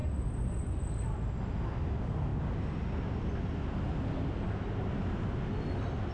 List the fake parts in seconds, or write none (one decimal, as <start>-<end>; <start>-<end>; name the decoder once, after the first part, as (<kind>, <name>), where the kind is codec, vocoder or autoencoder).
none